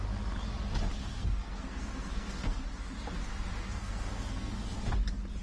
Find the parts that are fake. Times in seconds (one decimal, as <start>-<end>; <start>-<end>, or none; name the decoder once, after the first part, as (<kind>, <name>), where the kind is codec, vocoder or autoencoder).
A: 1.0-2.6 (codec, SNAC); 3.8-4.5